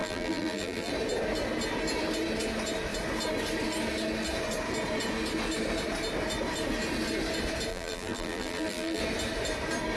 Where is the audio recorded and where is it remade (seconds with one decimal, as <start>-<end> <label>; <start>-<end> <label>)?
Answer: 0.0-0.9 remade; 0.9-7.7 recorded; 7.7-9.0 remade; 9.0-10.0 recorded